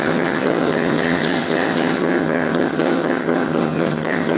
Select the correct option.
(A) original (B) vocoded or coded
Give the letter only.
B